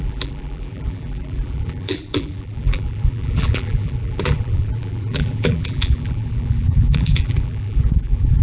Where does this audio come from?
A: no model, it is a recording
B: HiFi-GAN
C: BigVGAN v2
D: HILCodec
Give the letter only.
C